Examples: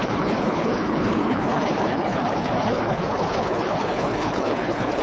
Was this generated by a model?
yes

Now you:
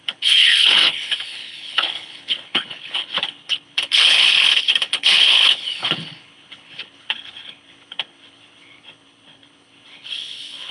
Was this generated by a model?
yes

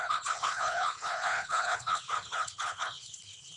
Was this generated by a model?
yes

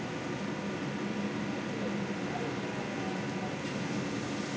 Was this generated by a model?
no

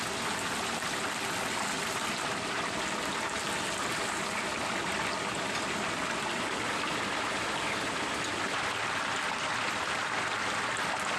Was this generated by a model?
no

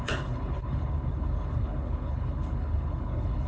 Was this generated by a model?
yes